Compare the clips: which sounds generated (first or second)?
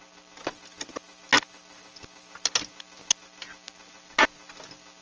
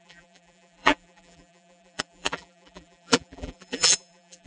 second